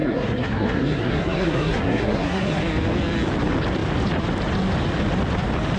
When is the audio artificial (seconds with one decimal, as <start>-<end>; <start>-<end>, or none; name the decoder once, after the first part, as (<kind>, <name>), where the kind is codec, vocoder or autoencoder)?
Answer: 0.0-2.6 (codec, SNAC)